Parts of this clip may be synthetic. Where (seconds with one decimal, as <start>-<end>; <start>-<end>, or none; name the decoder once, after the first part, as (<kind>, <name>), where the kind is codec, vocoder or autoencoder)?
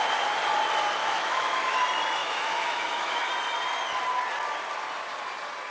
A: 1.0-1.8 (autoencoder, DAC-VAE); 2.2-3.3